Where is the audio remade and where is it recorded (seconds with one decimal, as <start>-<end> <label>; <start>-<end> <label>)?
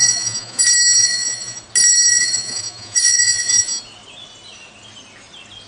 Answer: 0.0-0.6 remade; 0.6-1.0 recorded; 1.0-1.6 remade; 1.6-2.1 recorded; 2.1-3.8 remade; 3.8-5.7 recorded